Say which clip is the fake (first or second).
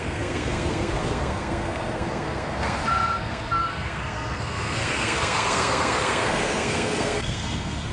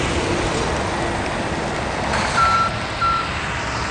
first